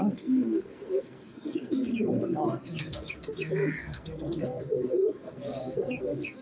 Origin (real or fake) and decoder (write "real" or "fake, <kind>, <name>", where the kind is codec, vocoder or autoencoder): fake, codec, SNAC